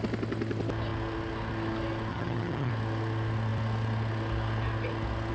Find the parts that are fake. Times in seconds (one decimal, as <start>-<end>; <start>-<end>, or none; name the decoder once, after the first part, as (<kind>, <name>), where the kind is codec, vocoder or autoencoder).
2.1-2.7 (vocoder, HiFi-GAN)